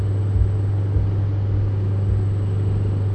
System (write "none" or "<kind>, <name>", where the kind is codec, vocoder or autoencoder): none